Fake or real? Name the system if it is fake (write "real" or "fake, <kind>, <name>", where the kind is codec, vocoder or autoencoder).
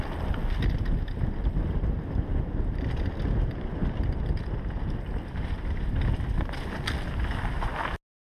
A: real